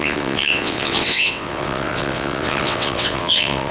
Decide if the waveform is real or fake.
fake